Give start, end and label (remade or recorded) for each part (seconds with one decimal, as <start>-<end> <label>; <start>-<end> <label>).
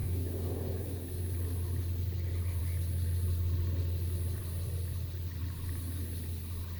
0.0-1.3 remade; 1.3-6.8 recorded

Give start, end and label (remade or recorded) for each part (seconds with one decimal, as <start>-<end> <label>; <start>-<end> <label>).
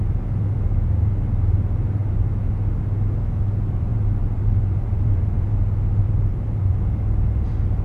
0.0-3.9 recorded; 3.9-5.5 remade; 5.5-6.0 recorded; 6.0-6.8 remade; 6.8-7.8 recorded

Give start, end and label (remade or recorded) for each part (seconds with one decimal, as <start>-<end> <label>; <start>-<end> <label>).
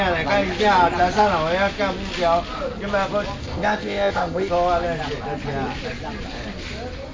0.0-3.4 recorded; 3.4-4.5 remade; 4.5-7.1 recorded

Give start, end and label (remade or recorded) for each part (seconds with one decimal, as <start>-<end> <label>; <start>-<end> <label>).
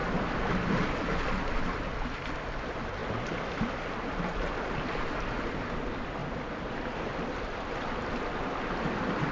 0.0-9.3 recorded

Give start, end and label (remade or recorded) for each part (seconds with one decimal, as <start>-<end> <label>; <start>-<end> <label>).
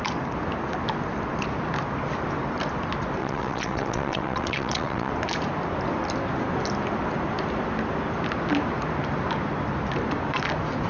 0.0-3.2 recorded; 3.2-5.1 remade; 5.1-10.9 recorded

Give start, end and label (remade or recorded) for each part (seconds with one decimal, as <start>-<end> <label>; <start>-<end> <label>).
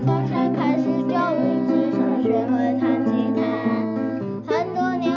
0.0-0.6 remade; 0.6-5.2 recorded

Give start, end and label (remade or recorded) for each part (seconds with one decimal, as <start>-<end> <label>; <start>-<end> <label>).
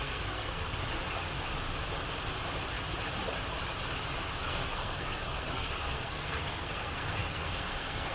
0.0-0.8 remade; 0.8-4.4 recorded; 4.4-8.1 remade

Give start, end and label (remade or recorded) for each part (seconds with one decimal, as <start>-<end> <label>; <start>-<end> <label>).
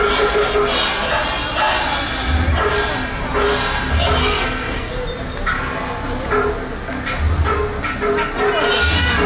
0.0-4.2 recorded; 4.2-4.9 remade; 4.9-9.3 recorded